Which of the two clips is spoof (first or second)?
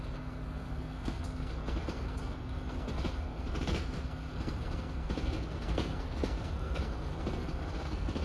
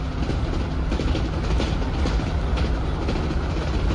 first